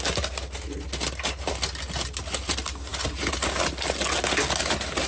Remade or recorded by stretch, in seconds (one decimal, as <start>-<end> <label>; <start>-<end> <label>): 0.0-5.1 recorded